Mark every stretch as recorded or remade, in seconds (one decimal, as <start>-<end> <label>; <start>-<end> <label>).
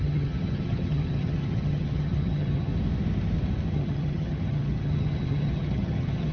0.0-2.7 remade; 2.7-3.7 recorded; 3.7-6.3 remade